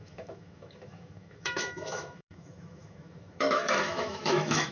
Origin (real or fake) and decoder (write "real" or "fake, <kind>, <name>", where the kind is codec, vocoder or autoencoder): fake, autoencoder, DAC-VAE